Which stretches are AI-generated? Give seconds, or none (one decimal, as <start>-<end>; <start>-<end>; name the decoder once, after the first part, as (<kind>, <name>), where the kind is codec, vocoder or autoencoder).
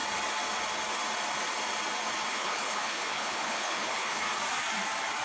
2.3-4.2 (codec, HILCodec)